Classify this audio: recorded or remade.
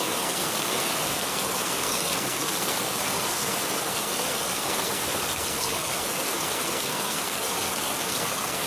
remade